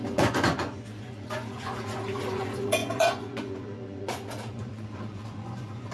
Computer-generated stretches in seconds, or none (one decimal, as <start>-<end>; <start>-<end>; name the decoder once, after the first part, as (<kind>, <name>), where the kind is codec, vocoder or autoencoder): 0.0-5.9 (vocoder, Vocos)

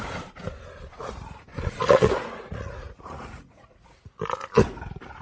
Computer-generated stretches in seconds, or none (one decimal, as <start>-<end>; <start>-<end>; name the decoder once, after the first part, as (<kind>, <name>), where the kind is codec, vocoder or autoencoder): 1.5-4.2 (vocoder, Vocos)

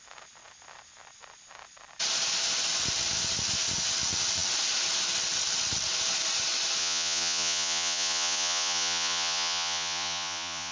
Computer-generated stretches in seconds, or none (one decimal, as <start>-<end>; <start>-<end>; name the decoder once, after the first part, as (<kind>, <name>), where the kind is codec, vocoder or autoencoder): 6.8-10.7 (vocoder, Vocos)